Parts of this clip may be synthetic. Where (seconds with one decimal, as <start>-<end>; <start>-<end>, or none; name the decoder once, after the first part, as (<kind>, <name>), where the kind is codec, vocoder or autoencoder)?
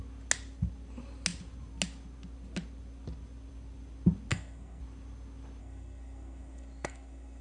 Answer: 4.3-4.8 (codec, SNAC); 5.6-7.4